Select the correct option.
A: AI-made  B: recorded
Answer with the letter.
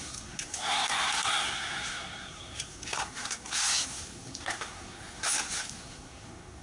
A